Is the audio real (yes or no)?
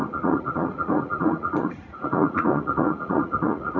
no